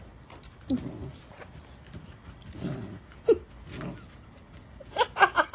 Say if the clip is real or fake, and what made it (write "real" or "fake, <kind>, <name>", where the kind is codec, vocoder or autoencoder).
real